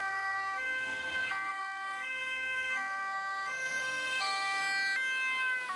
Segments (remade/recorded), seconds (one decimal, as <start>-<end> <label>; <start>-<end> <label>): 0.0-4.6 remade; 4.6-5.8 recorded